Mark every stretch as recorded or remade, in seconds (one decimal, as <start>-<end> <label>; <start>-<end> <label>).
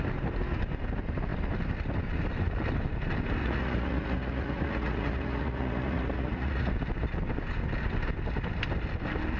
0.0-3.4 recorded; 3.4-6.7 remade; 6.7-9.4 recorded